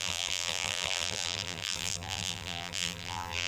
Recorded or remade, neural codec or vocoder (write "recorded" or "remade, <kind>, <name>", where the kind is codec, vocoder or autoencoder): remade, vocoder, BigVGAN v2